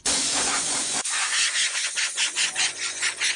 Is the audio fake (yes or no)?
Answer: yes